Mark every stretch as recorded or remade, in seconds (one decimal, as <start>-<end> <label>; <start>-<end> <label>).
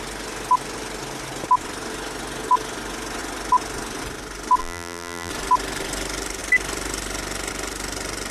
0.0-4.6 recorded; 4.6-5.3 remade; 5.3-8.3 recorded